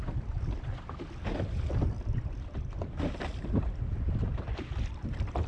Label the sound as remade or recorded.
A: recorded